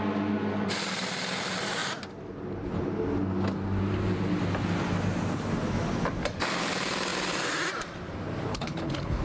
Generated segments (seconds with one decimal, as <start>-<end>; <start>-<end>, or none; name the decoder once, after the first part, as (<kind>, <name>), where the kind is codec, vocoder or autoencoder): 8.5-9.2 (codec, HILCodec)